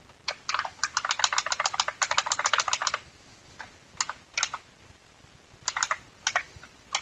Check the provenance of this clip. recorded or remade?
recorded